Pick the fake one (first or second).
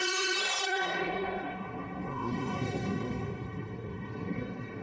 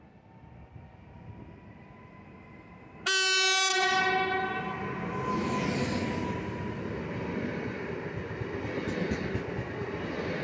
first